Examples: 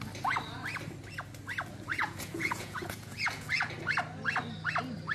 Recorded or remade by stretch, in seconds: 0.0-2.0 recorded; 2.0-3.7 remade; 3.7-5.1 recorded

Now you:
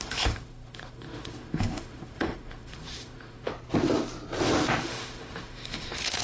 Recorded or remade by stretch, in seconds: 0.0-3.5 remade; 3.5-4.8 recorded; 4.8-6.2 remade

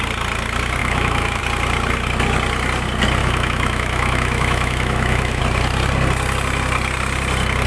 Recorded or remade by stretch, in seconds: 0.0-0.8 recorded; 0.8-1.4 remade; 1.4-3.2 recorded; 3.2-5.4 remade; 5.4-7.7 recorded

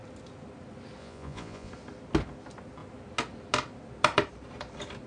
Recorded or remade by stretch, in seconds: 0.0-1.0 recorded; 1.0-1.7 remade; 1.7-5.1 recorded

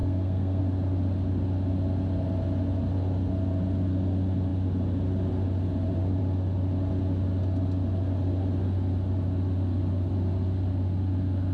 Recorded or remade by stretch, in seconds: 0.0-0.6 remade; 0.6-11.5 recorded

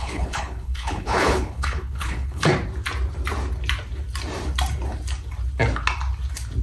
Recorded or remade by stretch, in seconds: 0.0-2.5 remade; 2.5-6.6 recorded